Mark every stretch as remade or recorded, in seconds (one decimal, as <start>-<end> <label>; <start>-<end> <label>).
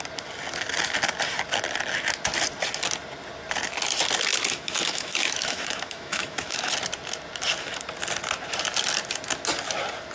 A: 0.0-4.3 recorded; 4.3-6.7 remade; 6.7-10.1 recorded